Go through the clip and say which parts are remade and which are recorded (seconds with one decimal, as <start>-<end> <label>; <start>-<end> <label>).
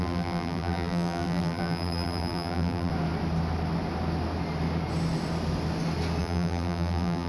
0.0-2.9 remade; 2.9-6.2 recorded; 6.2-7.3 remade